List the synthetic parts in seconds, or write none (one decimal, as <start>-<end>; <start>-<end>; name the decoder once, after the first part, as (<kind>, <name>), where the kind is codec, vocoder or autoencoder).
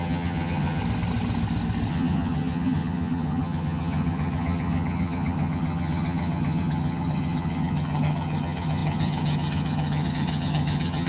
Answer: 0.0-0.8 (vocoder, HiFi-GAN); 1.9-11.1